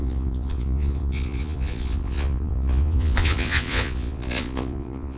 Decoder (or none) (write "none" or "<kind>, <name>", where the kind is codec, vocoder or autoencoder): vocoder, Vocos